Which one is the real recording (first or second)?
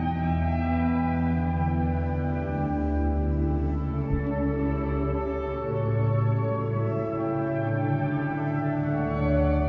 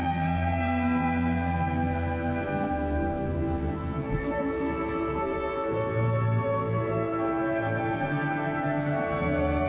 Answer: first